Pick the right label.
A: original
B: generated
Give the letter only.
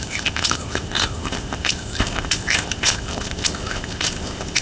B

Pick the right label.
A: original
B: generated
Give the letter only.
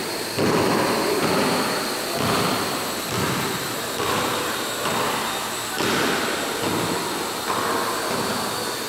A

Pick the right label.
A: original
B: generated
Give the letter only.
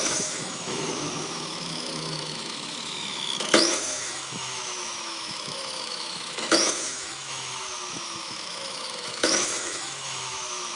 B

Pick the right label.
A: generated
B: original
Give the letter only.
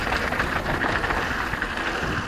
B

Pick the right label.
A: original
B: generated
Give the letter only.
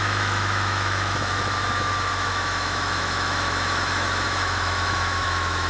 B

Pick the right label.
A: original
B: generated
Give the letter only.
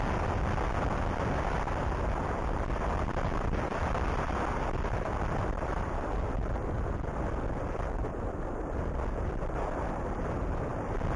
A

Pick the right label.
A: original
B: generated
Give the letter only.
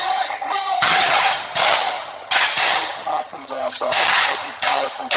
B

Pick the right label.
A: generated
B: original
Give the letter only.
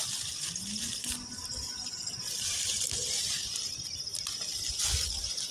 B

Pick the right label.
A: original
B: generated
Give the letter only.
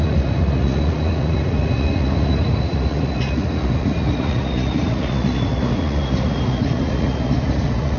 B